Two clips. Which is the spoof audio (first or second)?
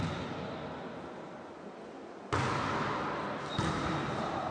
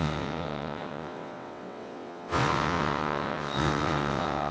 second